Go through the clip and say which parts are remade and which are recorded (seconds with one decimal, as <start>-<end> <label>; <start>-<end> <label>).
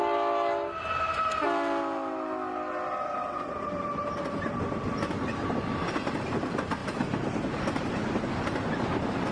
0.0-6.8 recorded; 6.8-9.3 remade